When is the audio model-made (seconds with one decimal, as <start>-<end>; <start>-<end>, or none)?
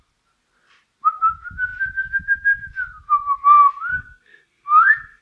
3.9-5.2